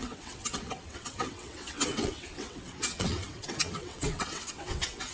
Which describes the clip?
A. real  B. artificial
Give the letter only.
B